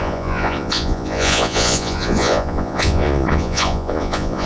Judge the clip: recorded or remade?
remade